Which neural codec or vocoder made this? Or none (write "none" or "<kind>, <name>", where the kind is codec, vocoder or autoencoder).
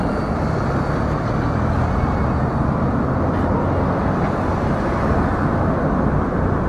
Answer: none